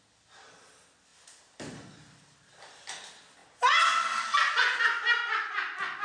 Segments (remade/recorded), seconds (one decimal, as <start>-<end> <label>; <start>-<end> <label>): 0.0-6.0 recorded